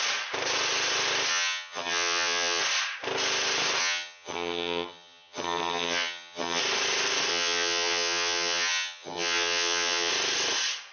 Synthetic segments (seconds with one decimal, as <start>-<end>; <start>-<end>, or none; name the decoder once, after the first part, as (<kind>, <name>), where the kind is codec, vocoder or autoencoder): 1.3-2.6 (vocoder, HiFi-GAN); 3.8-6.6; 7.3-10.1